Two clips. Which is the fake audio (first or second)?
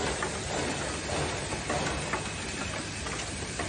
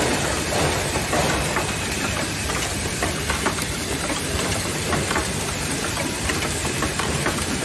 second